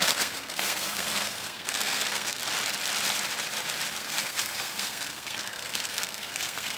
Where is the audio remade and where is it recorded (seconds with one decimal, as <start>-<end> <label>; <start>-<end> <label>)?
0.0-2.4 remade; 2.4-3.9 recorded; 3.9-6.8 remade